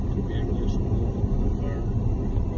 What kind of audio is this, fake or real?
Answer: real